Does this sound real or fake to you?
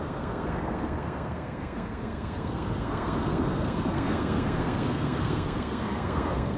fake